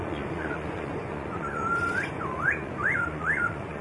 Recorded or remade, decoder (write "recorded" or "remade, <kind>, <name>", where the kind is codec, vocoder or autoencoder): remade, vocoder, Vocos